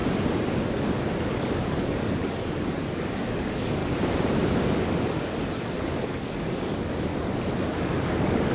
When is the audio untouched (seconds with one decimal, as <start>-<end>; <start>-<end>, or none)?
0.0-1.2; 3.8-5.0; 7.1-7.6